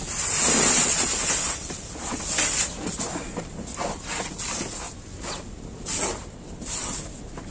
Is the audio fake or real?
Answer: real